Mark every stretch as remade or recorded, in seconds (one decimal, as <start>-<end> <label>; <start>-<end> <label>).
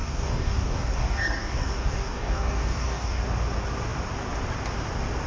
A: 0.0-3.2 remade; 3.2-5.3 recorded